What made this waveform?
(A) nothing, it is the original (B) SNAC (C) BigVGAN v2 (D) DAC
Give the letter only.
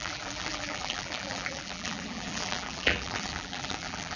C